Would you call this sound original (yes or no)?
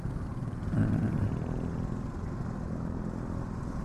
yes